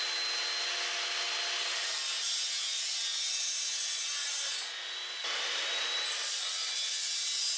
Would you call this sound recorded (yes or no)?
yes